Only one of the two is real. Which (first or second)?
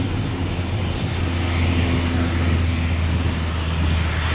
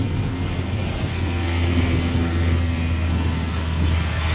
first